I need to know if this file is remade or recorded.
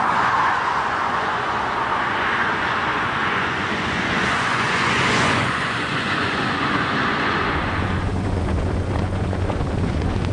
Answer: remade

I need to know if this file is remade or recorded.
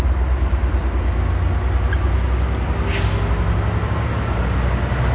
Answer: recorded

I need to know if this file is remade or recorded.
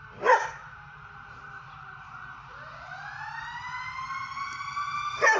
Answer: recorded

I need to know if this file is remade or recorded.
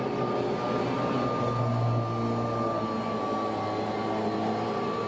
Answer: recorded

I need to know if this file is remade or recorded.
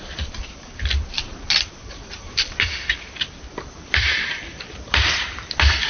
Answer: remade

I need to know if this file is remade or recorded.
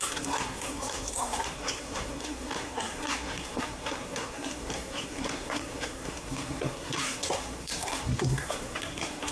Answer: remade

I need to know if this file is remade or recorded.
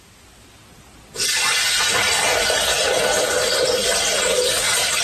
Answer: recorded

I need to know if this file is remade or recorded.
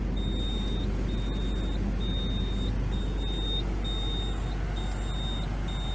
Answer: recorded